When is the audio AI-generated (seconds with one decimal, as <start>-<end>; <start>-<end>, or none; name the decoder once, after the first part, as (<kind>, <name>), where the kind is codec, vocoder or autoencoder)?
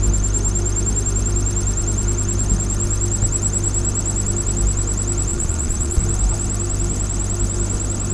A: 5.3-6.0 (vocoder, Vocos)